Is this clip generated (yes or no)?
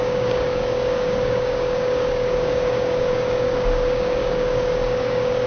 yes